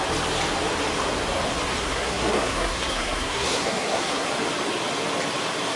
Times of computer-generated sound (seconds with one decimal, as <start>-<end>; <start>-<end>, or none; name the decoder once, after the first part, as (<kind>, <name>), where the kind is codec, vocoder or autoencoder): 1.8-4.3 (codec, SNAC)